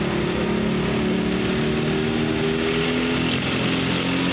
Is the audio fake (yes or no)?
no